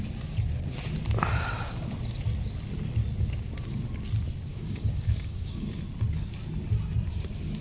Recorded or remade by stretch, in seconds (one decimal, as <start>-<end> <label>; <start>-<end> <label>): 0.0-4.5 recorded; 4.5-5.8 remade; 5.8-7.6 recorded

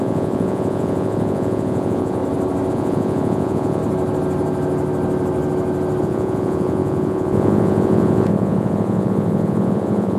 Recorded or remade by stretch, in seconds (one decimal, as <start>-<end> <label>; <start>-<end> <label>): 0.0-2.2 remade; 2.2-2.7 recorded; 2.7-3.8 remade; 3.8-6.0 recorded; 6.0-10.2 remade

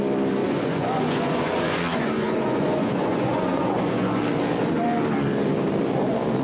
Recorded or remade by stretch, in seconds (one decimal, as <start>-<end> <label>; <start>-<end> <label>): 0.0-0.4 recorded; 0.4-4.2 remade; 4.2-6.4 recorded